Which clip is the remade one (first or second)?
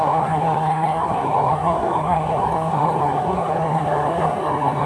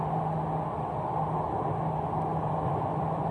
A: first